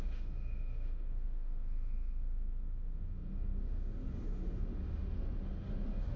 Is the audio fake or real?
fake